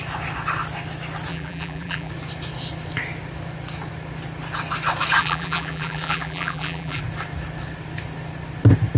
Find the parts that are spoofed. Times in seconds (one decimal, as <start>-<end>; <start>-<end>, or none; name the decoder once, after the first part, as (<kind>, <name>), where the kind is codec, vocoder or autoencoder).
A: 1.3-2.1 (vocoder, BigVGAN v2); 5.2-7.0